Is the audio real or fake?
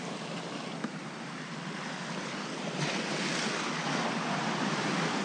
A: real